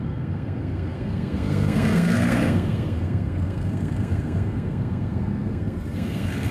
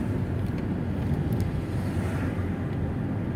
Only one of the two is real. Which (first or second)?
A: second